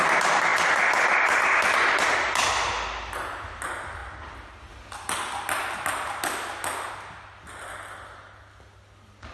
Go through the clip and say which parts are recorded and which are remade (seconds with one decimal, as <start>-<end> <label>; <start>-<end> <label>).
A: 0.0-9.3 recorded